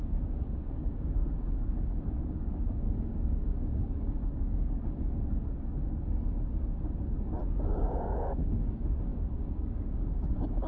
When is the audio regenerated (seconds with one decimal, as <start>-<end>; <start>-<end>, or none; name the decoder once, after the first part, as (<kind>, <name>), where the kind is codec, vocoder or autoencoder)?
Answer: 0.0-10.7 (codec, DAC)